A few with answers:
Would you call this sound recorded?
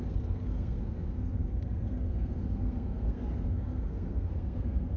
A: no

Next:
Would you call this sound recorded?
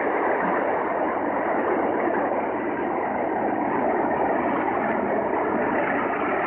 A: yes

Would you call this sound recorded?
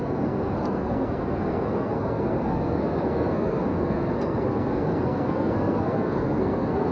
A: no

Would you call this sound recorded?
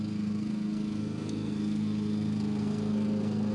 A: no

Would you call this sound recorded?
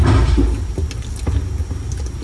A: yes